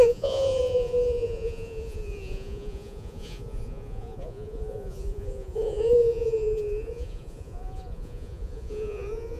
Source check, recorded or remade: remade